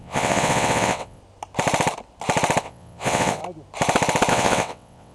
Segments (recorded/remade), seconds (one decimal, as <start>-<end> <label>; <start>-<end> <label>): 0.0-1.2 remade; 1.2-2.6 recorded; 2.6-3.4 remade; 3.4-4.3 recorded; 4.3-5.1 remade